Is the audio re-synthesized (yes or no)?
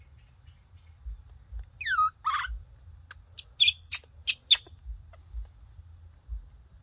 no